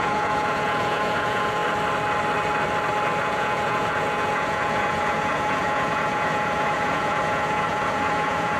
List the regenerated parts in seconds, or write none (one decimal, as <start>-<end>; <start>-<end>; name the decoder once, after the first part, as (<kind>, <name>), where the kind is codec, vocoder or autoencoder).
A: 0.0-1.6 (vocoder, Vocos); 3.2-8.6